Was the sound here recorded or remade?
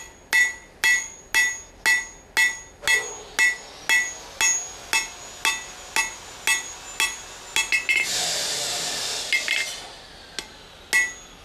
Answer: recorded